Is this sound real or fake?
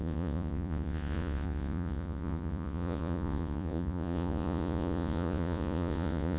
fake